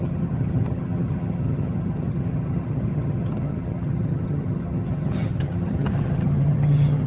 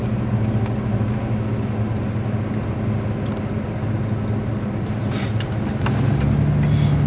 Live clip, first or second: second